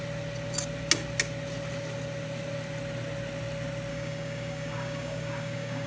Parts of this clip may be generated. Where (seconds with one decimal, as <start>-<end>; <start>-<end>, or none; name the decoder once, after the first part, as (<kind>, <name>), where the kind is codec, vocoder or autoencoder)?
3.9-5.9 (codec, DAC)

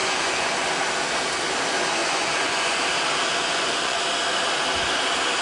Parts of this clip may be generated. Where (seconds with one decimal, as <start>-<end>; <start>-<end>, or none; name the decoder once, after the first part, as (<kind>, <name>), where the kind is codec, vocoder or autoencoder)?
0.0-0.7 (vocoder, Vocos); 2.0-2.8; 3.3-4.0

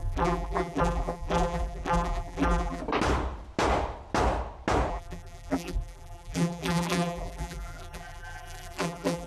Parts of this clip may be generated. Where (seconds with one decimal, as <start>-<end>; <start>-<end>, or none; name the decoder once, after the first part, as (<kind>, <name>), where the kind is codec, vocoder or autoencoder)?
0.0-2.8 (vocoder, BigVGAN v2); 4.9-9.3

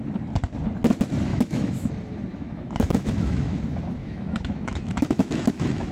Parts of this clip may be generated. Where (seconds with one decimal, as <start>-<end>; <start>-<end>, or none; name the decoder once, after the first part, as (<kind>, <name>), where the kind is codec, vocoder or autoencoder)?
1.3-1.9 (autoencoder, DAC-VAE); 2.3-3.6; 4.0-5.9

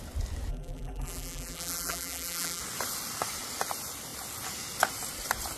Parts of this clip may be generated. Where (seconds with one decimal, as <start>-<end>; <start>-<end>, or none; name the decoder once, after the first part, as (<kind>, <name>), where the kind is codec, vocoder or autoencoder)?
0.5-2.6 (vocoder, BigVGAN v2)